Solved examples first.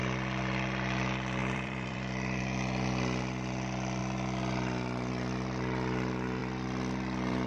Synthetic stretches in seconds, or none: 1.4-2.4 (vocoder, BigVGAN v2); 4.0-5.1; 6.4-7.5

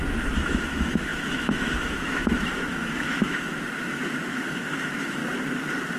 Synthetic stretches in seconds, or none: 0.0-5.2 (autoencoder, DAC-VAE)

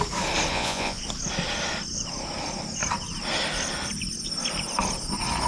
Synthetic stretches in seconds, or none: 0.5-1.0 (vocoder, Vocos)

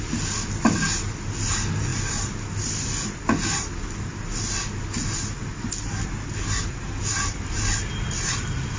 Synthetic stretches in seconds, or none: none

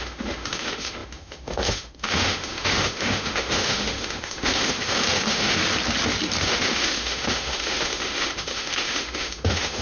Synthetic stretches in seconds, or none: 0.0-5.6 (autoencoder, DAC-VAE); 6.4-9.8

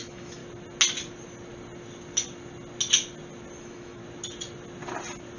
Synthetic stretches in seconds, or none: 0.0-0.4 (autoencoder, DAC-VAE); 3.6-4.0